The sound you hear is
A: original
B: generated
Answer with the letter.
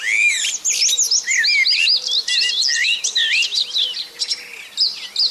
A